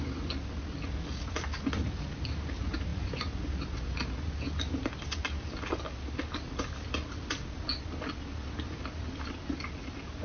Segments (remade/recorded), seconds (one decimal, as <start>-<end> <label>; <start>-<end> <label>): 0.0-10.2 recorded